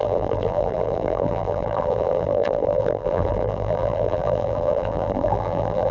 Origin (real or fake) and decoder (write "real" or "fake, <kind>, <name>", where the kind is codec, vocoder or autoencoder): fake, vocoder, BigVGAN v2